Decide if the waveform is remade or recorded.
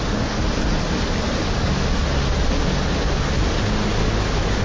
recorded